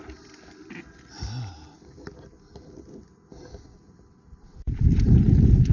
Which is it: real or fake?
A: real